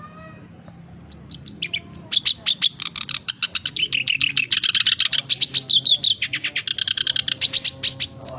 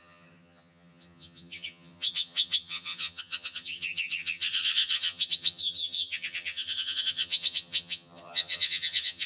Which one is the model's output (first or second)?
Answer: second